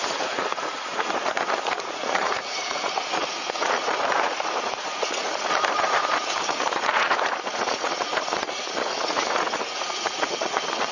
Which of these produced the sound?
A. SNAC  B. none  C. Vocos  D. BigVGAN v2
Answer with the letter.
C